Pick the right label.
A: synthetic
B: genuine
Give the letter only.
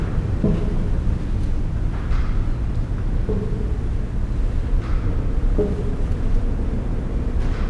B